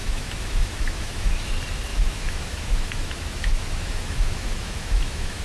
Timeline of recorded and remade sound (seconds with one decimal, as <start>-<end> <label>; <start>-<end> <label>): 0.0-1.5 remade; 1.5-1.9 recorded; 1.9-5.4 remade